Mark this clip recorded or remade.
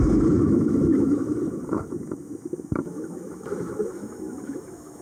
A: remade